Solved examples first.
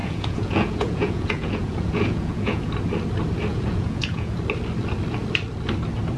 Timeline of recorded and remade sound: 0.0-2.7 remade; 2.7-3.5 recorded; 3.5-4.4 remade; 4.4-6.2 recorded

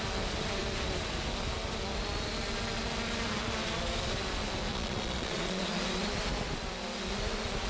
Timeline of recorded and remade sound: 0.0-4.7 recorded; 4.7-5.7 remade; 5.7-7.7 recorded